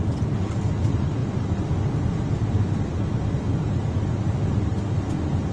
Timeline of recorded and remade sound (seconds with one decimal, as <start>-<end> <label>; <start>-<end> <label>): 0.0-5.5 recorded